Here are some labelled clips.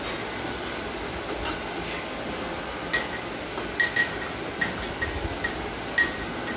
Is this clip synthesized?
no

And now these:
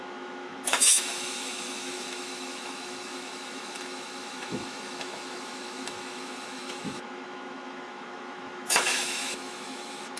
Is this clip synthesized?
yes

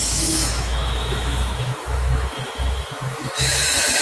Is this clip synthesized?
yes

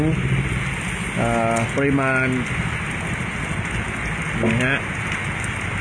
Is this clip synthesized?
no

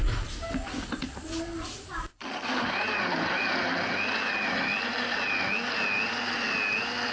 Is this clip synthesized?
no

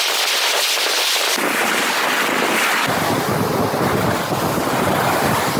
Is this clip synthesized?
no